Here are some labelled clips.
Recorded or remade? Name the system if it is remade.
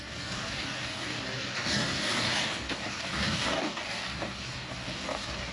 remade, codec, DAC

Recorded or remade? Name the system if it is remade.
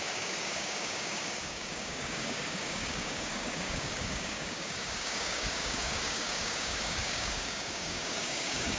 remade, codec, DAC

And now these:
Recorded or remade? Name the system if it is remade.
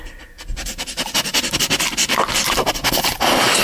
recorded